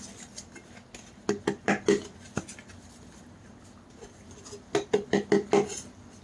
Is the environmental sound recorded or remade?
recorded